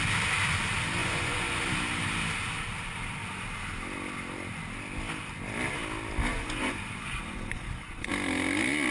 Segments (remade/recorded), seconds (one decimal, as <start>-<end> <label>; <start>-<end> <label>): 0.0-1.0 recorded; 1.0-1.6 remade; 1.6-6.3 recorded; 6.3-8.1 remade; 8.1-8.9 recorded